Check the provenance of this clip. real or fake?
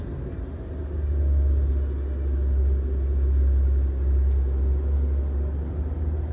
real